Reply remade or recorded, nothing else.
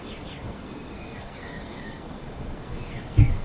remade